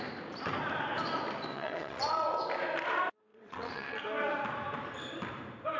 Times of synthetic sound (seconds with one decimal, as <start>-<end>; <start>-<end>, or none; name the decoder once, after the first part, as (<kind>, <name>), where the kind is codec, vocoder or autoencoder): 1.5-2.4 (vocoder, WaveNeXt); 3.3-4.0